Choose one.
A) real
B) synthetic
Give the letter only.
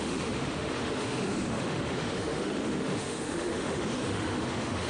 B